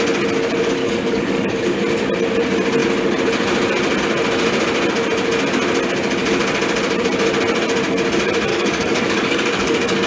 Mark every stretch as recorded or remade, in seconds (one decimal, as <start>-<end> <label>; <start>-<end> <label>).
0.0-0.8 recorded; 0.8-1.8 remade; 1.8-8.5 recorded; 8.5-10.1 remade